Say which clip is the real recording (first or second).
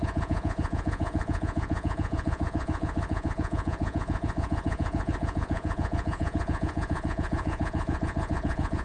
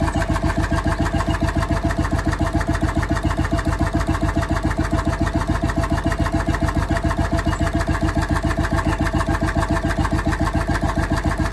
second